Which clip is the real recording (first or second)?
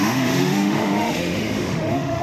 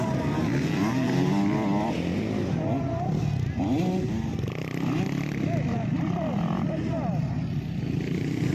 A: second